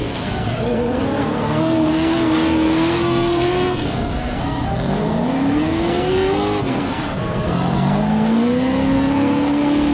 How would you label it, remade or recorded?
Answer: remade